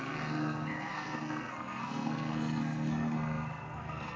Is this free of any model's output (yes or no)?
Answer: no